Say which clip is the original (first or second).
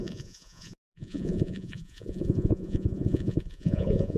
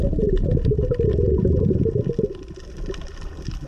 second